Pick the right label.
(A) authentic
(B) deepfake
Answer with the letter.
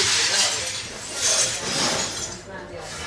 A